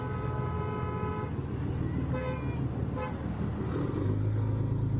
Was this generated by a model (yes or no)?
no